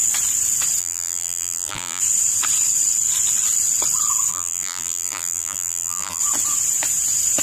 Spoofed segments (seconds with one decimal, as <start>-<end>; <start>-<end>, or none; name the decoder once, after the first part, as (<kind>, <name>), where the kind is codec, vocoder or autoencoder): 0.8-2.0 (vocoder, BigVGAN v2); 4.3-6.2